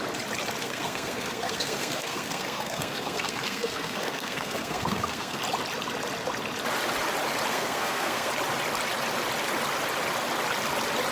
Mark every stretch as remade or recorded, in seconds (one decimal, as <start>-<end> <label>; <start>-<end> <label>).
0.0-0.6 recorded; 0.6-5.4 remade; 5.4-7.5 recorded; 7.5-8.3 remade; 8.3-11.1 recorded

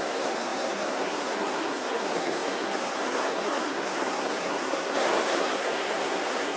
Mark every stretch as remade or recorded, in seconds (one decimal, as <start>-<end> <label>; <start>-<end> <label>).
0.0-6.6 remade

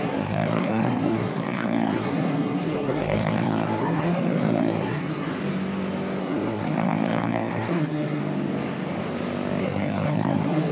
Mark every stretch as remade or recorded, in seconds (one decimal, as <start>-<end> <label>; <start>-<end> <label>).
0.0-5.3 remade; 5.3-6.2 recorded; 6.2-8.2 remade; 8.2-9.6 recorded; 9.6-10.7 remade

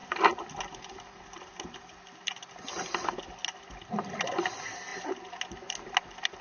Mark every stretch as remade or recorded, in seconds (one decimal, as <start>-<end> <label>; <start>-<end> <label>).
0.0-6.4 recorded